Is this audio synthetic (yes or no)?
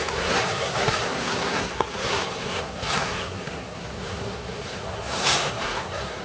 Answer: yes